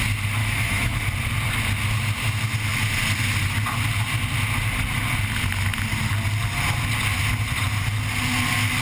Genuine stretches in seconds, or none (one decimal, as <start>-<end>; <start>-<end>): 0.0-0.4; 1.0-8.8

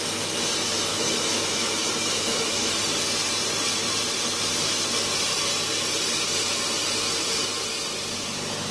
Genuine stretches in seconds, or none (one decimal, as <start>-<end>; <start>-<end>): 0.0-0.9; 2.7-8.7

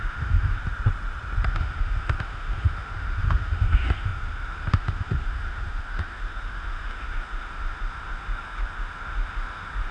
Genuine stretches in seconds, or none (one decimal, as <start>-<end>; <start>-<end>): 0.6-1.5

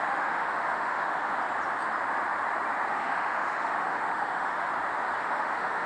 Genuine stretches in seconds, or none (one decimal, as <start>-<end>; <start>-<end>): 1.3-2.9; 4.7-5.2

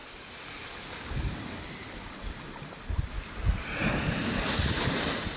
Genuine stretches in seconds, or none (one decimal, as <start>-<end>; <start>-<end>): 0.0-5.4